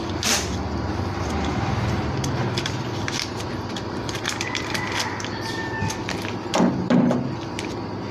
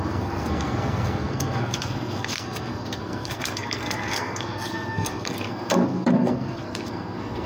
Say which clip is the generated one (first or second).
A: second